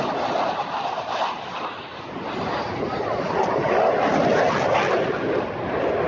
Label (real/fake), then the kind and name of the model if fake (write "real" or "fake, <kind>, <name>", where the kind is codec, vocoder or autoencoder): real